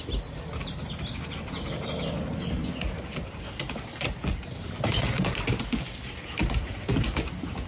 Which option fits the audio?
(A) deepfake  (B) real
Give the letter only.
B